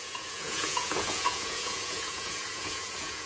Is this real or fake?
fake